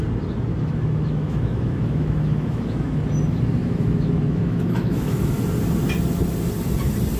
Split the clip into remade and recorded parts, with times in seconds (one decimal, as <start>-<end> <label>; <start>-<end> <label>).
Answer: 0.0-0.5 recorded; 0.5-3.1 remade; 3.1-3.6 recorded; 3.6-5.4 remade; 5.4-7.2 recorded